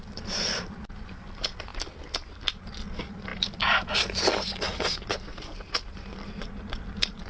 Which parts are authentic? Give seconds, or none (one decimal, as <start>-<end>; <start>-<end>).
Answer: 0.0-7.3